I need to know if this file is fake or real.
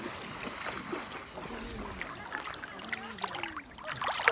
real